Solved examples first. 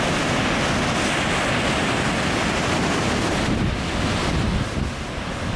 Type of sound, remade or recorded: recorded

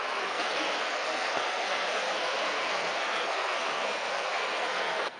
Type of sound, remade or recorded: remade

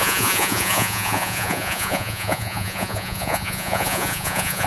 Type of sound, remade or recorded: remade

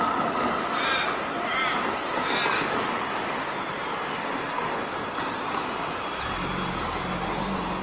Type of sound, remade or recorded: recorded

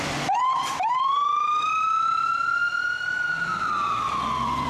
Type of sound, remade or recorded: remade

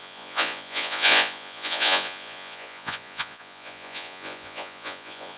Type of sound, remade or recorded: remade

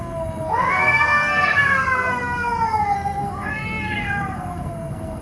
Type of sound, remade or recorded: remade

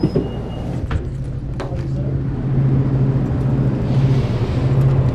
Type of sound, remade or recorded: recorded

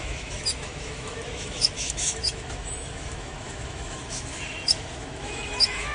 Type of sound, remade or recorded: remade